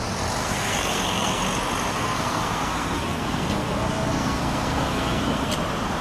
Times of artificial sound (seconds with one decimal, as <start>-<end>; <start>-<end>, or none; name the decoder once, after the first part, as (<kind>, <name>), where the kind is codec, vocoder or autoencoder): 0.4-1.4 (codec, SNAC); 1.9-5.5